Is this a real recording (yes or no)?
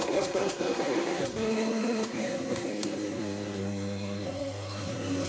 no